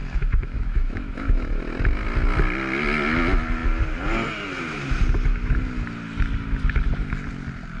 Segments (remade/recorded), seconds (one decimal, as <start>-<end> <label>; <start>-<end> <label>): 0.0-1.6 remade; 1.6-7.8 recorded